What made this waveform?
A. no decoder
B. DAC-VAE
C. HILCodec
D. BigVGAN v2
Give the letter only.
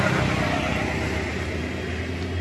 A